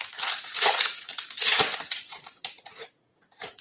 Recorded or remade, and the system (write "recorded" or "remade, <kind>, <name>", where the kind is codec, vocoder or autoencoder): remade, vocoder, Vocos